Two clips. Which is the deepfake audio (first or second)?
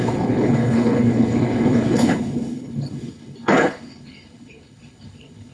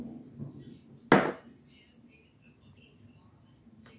first